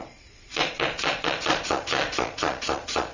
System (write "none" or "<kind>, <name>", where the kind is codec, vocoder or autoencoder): vocoder, Vocos